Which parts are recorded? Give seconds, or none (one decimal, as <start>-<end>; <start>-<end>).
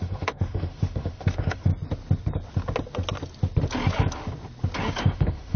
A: 1.7-5.0